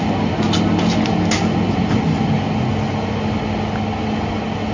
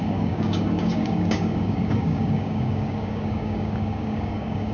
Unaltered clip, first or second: first